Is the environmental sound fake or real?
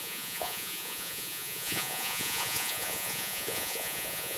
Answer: fake